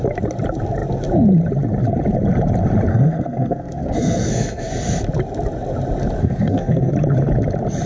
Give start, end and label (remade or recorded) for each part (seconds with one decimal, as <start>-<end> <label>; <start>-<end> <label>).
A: 0.0-2.9 recorded; 2.9-4.7 remade; 4.7-6.2 recorded; 6.2-6.9 remade; 6.9-7.9 recorded